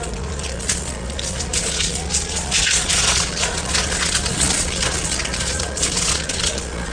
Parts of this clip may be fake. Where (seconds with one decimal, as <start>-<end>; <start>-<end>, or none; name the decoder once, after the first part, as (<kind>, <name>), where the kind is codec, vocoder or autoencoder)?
0.0-6.9 (vocoder, Vocos)